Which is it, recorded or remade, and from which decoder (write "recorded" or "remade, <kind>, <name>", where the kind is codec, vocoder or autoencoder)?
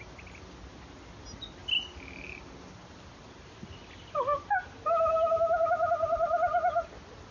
recorded